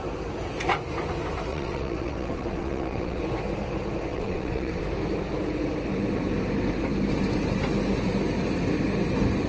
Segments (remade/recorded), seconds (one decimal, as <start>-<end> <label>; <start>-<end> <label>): 0.0-1.5 recorded; 1.5-3.2 remade; 3.2-4.1 recorded; 4.1-4.8 remade; 4.8-9.5 recorded